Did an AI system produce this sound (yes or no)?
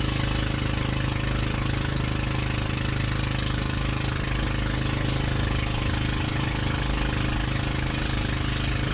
no